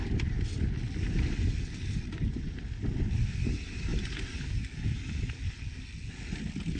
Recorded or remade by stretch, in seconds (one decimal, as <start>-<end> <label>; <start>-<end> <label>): 0.0-6.8 recorded